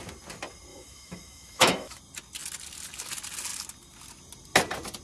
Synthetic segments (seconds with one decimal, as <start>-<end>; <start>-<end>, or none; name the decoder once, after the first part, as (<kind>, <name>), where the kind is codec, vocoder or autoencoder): 0.7-2.0 (autoencoder, DAC-VAE)